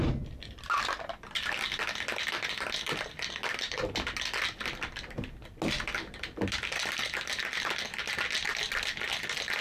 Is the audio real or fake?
real